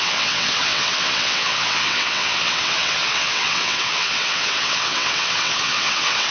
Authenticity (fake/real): fake